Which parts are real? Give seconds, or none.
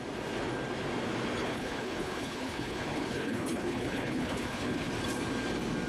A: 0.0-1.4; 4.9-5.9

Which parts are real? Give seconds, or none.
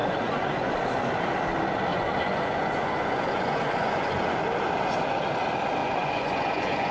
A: 0.7-1.9; 4.4-5.8